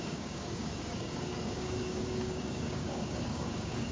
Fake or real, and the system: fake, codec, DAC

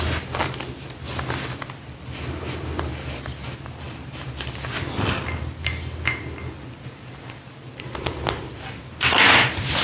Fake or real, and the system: real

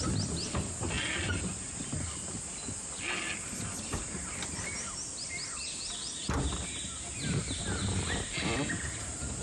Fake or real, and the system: real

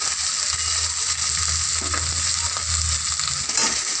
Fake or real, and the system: real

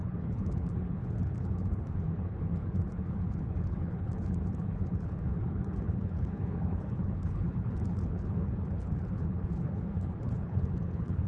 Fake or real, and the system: fake, codec, HILCodec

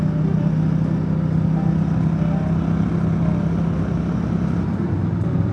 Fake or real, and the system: real